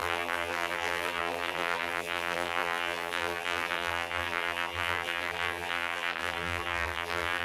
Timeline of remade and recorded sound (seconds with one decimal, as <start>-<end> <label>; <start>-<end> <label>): 0.0-7.4 remade